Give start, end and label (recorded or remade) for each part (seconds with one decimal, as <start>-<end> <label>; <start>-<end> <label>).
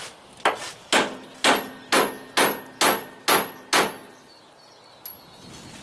0.0-5.8 recorded